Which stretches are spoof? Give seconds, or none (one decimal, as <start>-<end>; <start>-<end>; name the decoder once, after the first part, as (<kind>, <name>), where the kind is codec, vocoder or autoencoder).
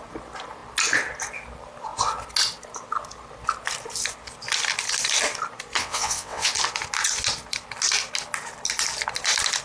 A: 5.8-6.5 (vocoder, WaveNeXt)